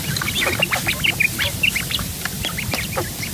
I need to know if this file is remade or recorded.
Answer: recorded